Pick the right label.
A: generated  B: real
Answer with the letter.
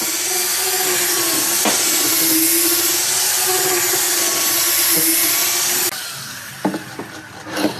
B